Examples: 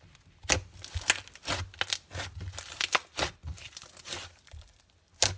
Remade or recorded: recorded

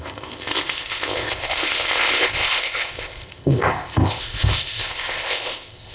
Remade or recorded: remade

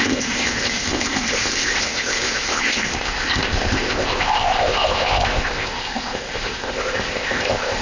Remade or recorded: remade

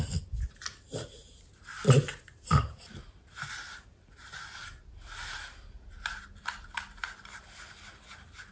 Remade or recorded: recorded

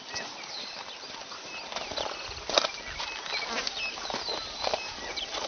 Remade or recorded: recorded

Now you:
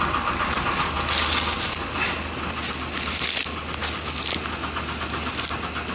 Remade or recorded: recorded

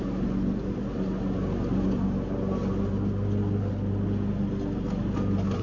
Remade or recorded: recorded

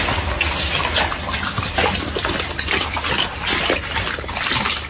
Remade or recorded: recorded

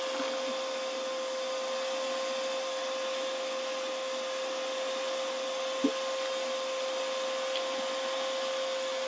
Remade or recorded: recorded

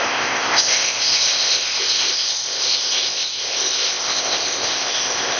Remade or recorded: remade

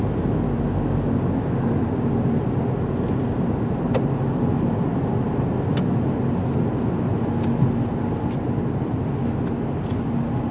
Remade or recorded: recorded